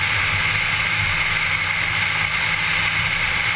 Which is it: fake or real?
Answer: real